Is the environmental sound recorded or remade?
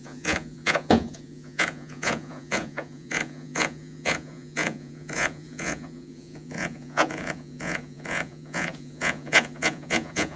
remade